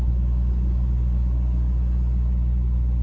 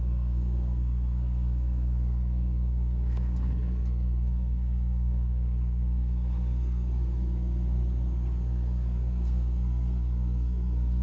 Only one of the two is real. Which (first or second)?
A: first